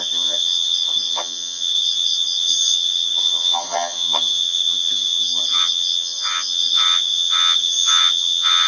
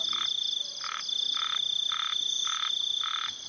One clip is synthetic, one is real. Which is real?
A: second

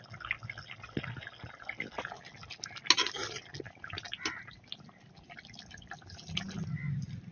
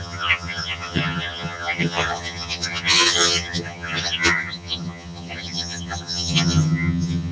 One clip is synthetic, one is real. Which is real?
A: first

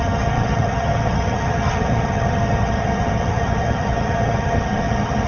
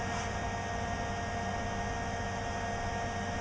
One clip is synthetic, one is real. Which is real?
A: second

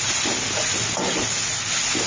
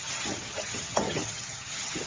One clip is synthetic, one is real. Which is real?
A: first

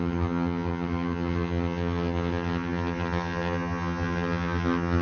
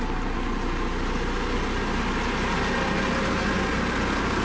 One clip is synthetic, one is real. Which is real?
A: second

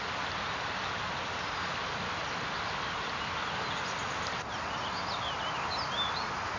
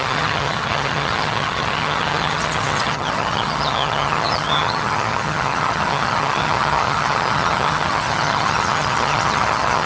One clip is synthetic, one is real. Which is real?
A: first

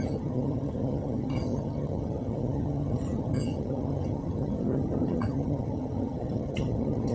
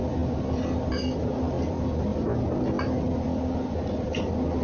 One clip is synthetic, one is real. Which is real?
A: second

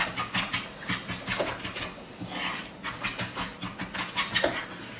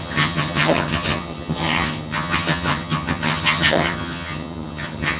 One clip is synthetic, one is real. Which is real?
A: first